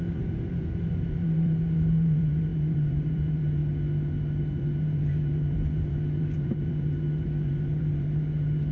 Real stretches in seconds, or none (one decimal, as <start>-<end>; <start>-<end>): 3.6-4.4